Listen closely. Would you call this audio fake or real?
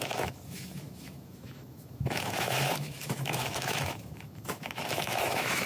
fake